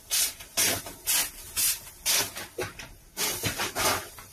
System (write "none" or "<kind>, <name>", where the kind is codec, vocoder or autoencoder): none